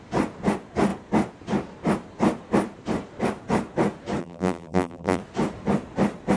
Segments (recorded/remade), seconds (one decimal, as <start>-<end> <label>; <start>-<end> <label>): 0.0-4.2 recorded; 4.2-5.2 remade; 5.2-6.4 recorded